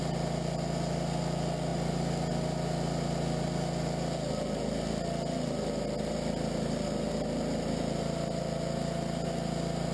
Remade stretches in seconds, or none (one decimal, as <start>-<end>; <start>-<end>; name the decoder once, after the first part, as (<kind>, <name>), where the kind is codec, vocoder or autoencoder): none